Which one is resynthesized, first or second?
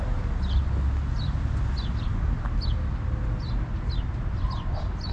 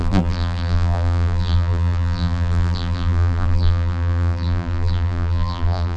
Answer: second